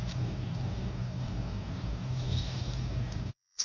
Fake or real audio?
fake